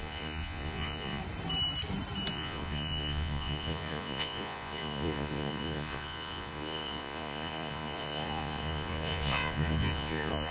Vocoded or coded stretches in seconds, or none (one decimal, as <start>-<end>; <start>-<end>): 0.0-1.2; 2.3-10.5